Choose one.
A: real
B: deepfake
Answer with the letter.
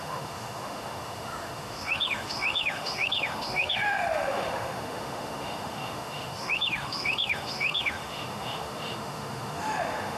B